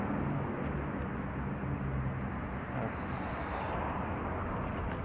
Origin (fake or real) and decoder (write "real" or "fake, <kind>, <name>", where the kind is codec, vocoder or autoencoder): real